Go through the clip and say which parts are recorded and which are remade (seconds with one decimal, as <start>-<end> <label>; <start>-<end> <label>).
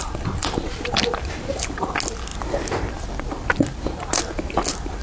0.0-0.4 recorded; 0.4-1.2 remade; 1.2-2.3 recorded; 2.3-4.0 remade; 4.0-5.0 recorded